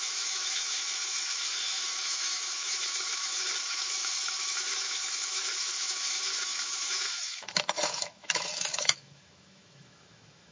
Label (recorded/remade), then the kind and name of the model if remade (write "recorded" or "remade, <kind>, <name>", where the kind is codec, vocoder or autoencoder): remade, autoencoder, DAC-VAE